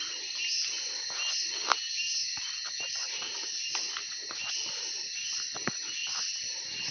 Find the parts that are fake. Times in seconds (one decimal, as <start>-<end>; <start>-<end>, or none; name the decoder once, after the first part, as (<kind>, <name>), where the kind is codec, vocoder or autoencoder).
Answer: none